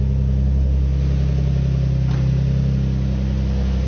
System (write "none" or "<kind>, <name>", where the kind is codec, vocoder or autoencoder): none